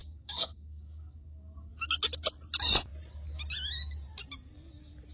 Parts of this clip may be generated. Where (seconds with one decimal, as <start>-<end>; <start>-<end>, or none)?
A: 0.0-1.7